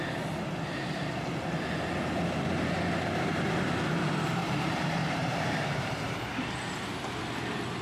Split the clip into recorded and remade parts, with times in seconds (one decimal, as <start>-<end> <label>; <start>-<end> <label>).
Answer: 0.0-4.4 recorded; 4.4-6.0 remade; 6.0-7.8 recorded

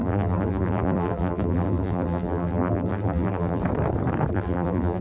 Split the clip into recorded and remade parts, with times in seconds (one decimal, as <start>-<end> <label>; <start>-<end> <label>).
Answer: 0.0-3.6 remade; 3.6-4.3 recorded; 4.3-5.0 remade

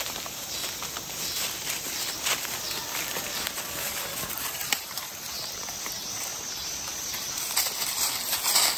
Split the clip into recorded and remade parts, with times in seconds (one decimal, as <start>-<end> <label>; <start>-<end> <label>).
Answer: 0.0-4.6 recorded; 4.6-5.1 remade; 5.1-6.3 recorded; 6.3-7.4 remade; 7.4-8.8 recorded